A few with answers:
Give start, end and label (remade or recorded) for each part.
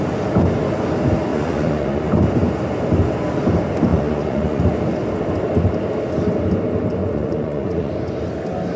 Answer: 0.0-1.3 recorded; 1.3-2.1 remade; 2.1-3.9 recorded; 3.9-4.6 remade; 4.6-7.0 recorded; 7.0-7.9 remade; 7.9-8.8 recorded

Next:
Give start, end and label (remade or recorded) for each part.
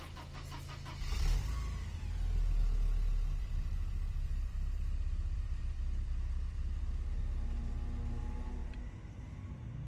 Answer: 0.0-2.6 recorded; 2.6-7.6 remade; 7.6-8.6 recorded; 8.6-9.2 remade; 9.2-9.9 recorded